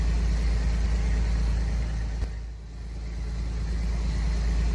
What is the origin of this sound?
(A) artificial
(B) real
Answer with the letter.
B